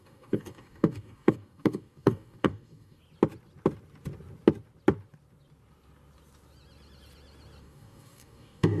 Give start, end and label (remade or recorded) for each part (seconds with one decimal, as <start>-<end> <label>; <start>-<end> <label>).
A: 0.0-3.0 remade; 3.0-7.6 recorded; 7.6-8.8 remade